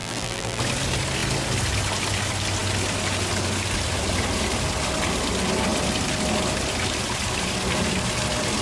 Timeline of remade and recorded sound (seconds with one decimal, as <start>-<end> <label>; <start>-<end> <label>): 0.0-0.6 remade; 0.6-8.6 recorded